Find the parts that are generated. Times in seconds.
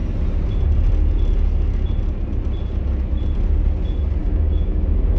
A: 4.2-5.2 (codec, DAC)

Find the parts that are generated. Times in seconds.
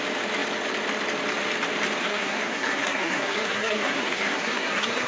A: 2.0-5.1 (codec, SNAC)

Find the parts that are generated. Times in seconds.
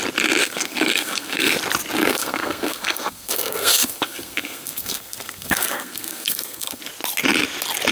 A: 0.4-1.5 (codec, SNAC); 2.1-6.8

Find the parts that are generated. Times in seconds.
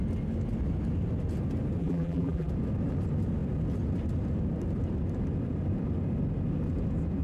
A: 1.8-2.5 (vocoder, BigVGAN v2)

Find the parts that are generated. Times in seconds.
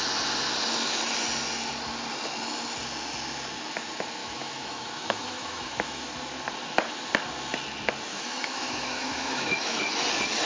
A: 4.2-6.0 (autoencoder, DAC-VAE); 8.1-9.8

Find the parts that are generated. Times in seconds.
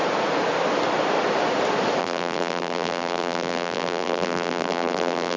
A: 2.0-5.4 (vocoder, BigVGAN v2)